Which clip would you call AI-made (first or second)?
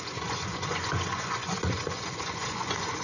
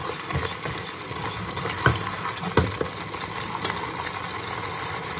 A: first